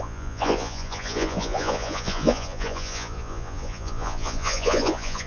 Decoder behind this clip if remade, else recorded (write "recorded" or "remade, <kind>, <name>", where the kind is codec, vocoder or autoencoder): remade, vocoder, Vocos